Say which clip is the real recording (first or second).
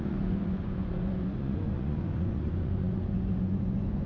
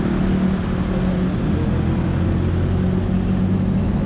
second